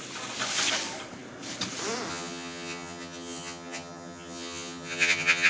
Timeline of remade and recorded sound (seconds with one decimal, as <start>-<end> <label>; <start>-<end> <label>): 0.0-2.1 recorded; 2.1-5.5 remade